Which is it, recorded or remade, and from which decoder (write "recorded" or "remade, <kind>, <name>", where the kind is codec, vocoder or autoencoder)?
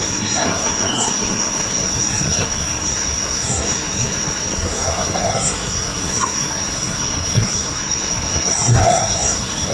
remade, codec, SNAC